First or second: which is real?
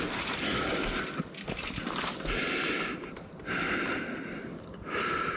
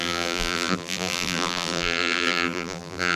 first